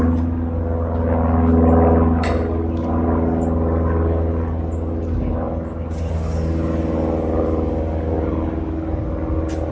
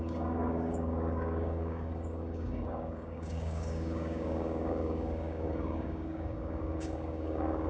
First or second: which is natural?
first